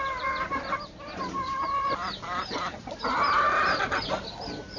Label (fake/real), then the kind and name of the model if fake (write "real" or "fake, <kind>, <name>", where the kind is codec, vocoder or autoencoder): real